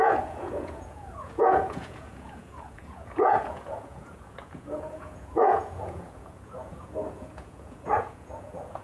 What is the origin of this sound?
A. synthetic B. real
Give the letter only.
A